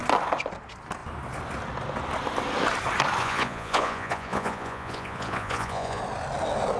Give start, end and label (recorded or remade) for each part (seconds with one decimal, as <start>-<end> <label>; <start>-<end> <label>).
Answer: 0.0-3.2 recorded; 3.2-6.0 remade; 6.0-6.8 recorded

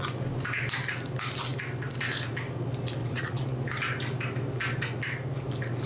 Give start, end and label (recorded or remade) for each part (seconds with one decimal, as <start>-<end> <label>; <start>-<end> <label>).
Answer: 0.0-3.0 recorded; 3.0-3.6 remade; 3.6-5.9 recorded

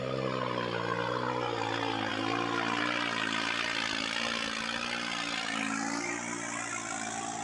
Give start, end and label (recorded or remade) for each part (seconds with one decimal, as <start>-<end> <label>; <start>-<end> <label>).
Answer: 0.0-7.4 recorded

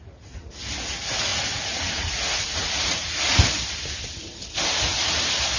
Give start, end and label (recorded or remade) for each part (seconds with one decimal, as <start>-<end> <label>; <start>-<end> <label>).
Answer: 0.0-1.3 recorded; 1.3-3.3 remade; 3.3-5.6 recorded

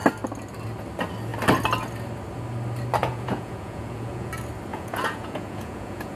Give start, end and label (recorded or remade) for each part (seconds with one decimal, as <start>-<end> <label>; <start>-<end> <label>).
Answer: 0.0-3.0 recorded; 3.0-4.3 remade; 4.3-4.7 recorded; 4.7-6.2 remade

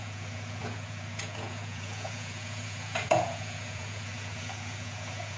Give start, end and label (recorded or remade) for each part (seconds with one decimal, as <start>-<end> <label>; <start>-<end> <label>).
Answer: 0.0-5.4 remade

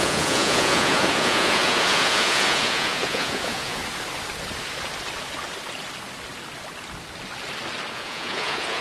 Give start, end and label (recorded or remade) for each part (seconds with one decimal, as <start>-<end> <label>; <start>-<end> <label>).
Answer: 0.0-3.8 remade; 3.8-7.9 recorded; 7.9-8.8 remade

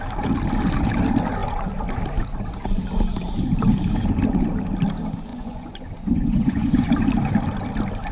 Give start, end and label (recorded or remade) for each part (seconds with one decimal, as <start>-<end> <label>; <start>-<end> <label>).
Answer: 0.0-5.3 recorded; 5.3-6.9 remade; 6.9-8.1 recorded